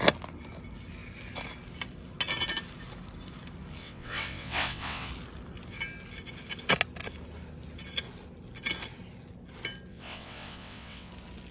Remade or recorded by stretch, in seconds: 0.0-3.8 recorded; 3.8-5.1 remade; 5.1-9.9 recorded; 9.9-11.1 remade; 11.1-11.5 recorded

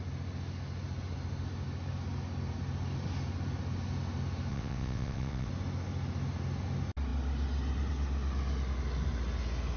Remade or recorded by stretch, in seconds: 0.0-4.5 recorded; 4.5-5.5 remade; 5.5-9.8 recorded